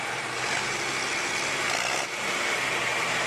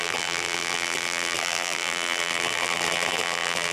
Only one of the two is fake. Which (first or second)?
second